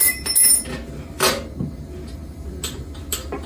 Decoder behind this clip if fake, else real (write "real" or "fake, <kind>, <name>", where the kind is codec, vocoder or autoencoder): real